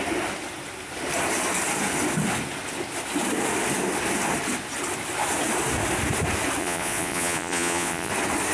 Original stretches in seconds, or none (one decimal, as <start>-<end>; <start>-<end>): 0.0-6.6; 8.1-8.5